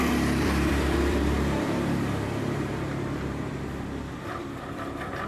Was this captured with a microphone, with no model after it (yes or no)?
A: no